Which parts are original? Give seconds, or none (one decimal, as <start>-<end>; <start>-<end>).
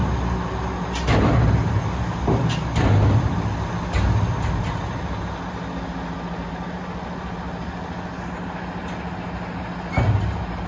0.0-10.7